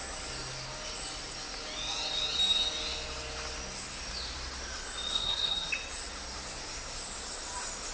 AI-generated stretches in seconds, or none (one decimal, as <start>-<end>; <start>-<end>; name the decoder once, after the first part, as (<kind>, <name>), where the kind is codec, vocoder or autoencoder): 5.1-5.7 (codec, SNAC)